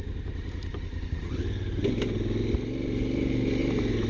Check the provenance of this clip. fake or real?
real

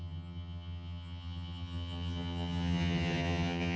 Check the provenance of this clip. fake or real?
fake